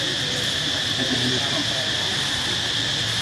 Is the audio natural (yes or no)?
yes